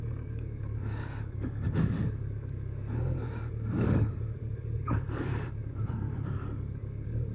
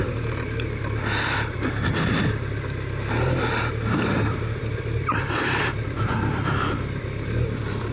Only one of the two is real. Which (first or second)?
second